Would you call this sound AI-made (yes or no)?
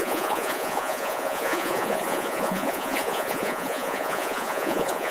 yes